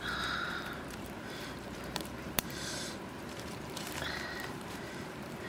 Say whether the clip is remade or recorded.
remade